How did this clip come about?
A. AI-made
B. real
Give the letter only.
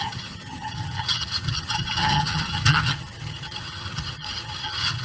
A